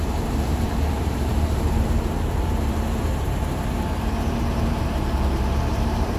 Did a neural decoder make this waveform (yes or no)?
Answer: yes